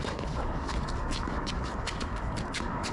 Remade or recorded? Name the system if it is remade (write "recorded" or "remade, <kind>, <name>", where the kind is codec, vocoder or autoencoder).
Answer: remade, codec, DAC